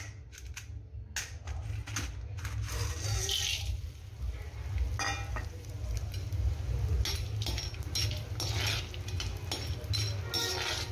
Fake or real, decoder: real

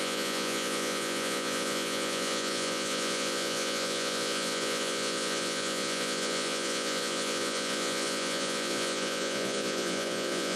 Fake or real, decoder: fake, vocoder, Vocos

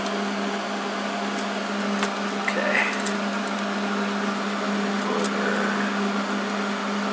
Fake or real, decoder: real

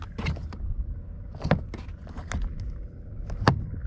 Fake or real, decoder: real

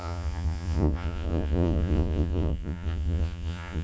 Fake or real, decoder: fake, vocoder, Vocos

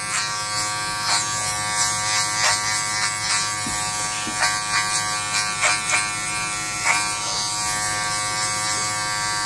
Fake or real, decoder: real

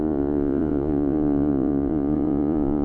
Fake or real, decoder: fake, vocoder, Vocos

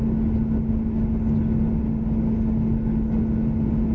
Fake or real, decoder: real